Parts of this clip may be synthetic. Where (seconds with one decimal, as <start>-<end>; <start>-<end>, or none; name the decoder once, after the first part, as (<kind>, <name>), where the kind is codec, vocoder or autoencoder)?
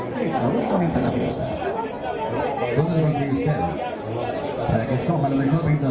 0.6-1.4 (codec, ZipCodec)